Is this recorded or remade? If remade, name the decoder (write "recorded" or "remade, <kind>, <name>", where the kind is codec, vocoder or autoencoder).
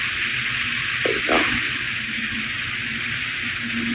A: recorded